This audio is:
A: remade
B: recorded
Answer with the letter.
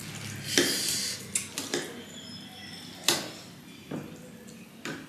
B